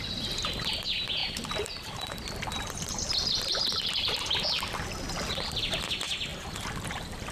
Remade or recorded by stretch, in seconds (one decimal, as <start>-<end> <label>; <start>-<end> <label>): 0.0-1.2 recorded; 1.2-5.6 remade; 5.6-7.3 recorded